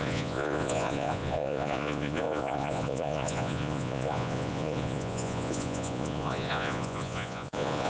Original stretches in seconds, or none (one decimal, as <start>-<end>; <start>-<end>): none